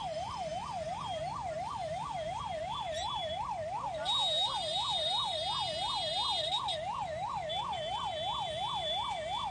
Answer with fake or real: real